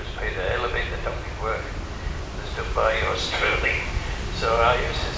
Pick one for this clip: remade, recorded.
recorded